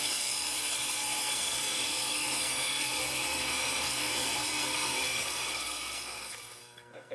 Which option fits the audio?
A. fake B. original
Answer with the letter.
A